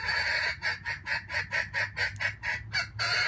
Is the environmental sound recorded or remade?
recorded